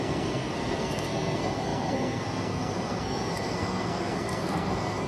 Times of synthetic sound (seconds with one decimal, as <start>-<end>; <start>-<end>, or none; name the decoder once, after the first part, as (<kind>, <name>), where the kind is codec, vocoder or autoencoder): 0.0-5.1 (codec, SNAC)